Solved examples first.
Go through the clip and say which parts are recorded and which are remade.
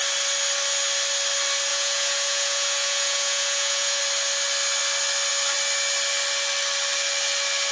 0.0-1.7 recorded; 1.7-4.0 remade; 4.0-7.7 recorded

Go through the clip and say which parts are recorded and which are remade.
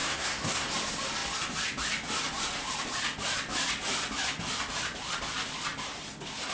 0.0-0.7 remade; 0.7-6.5 recorded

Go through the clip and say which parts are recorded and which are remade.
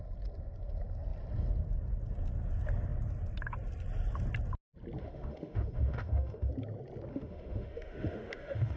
0.0-5.0 recorded; 5.0-6.5 remade; 6.5-7.1 recorded; 7.1-8.8 remade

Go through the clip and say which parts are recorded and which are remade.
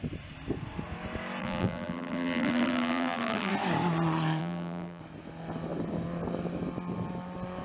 0.0-1.4 recorded; 1.4-3.5 remade; 3.5-4.4 recorded; 4.4-5.0 remade; 5.0-7.6 recorded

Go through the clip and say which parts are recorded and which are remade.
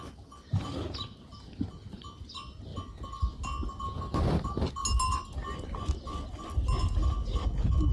0.0-7.9 recorded